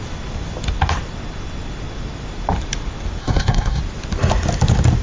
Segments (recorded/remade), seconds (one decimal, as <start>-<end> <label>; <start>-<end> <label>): 0.0-3.2 recorded; 3.2-3.8 remade; 3.8-5.0 recorded